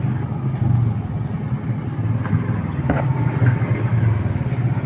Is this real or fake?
real